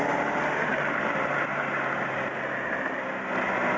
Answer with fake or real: real